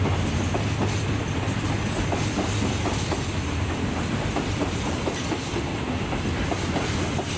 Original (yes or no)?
yes